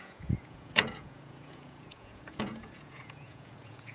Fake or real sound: fake